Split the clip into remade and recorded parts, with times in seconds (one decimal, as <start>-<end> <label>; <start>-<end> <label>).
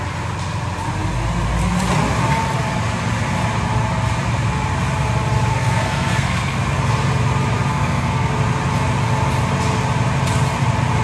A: 0.0-5.5 recorded; 5.5-6.6 remade; 6.6-7.7 recorded; 7.7-8.3 remade; 8.3-11.0 recorded